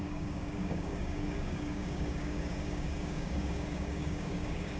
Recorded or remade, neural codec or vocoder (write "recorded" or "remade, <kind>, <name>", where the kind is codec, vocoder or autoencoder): remade, codec, DAC